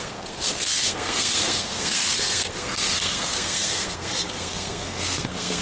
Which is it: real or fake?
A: fake